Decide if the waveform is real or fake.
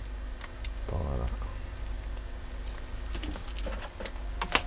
real